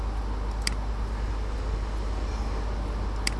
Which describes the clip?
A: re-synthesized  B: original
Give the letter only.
B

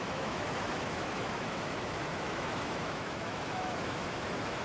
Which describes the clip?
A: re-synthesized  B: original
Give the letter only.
A